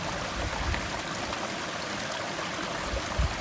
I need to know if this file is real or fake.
real